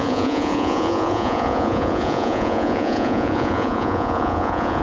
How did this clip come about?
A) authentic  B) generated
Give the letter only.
B